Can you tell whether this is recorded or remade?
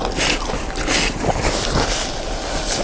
recorded